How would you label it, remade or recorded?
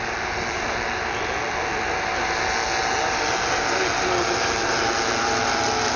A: recorded